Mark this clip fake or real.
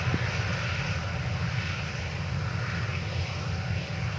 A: real